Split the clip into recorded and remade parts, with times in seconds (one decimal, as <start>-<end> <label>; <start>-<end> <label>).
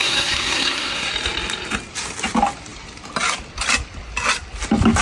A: 0.0-1.1 remade; 1.1-5.0 recorded